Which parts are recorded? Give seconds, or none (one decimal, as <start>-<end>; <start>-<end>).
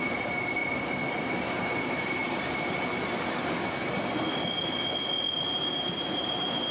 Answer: 0.6-1.2; 2.2-5.5